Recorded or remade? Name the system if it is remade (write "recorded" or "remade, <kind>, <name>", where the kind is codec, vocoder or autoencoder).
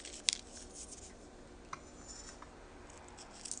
recorded